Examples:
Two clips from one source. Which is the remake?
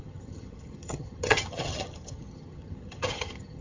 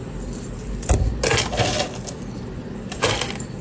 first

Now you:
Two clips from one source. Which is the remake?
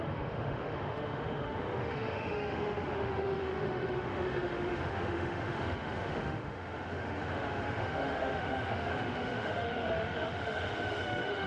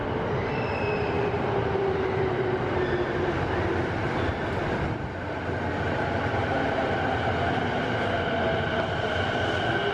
first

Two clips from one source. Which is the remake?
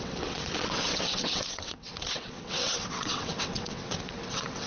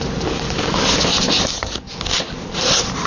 first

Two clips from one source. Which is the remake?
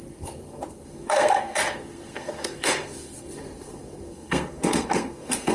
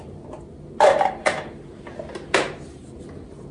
first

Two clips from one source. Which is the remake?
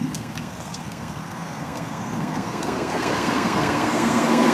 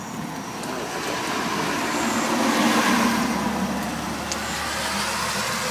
first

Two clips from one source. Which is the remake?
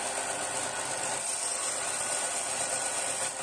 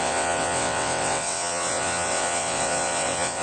second